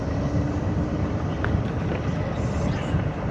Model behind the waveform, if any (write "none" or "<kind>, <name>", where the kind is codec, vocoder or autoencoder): none